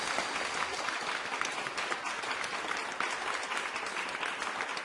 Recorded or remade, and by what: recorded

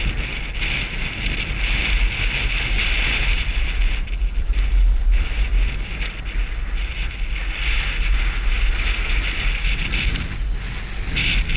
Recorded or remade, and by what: recorded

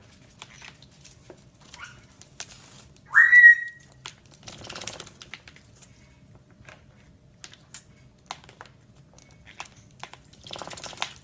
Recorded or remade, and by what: recorded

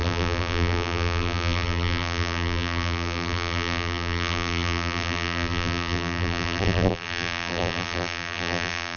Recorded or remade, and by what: remade, vocoder, BigVGAN v2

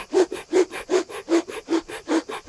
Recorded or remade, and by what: remade, vocoder, BigVGAN v2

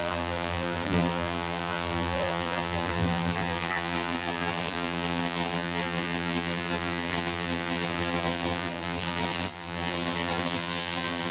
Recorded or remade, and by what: remade, vocoder, BigVGAN v2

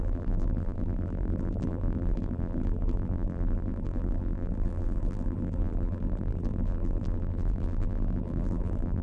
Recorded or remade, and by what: remade, vocoder, BigVGAN v2